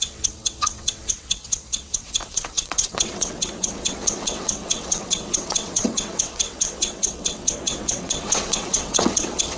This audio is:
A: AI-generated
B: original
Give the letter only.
A